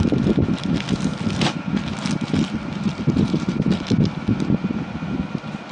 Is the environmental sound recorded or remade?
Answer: recorded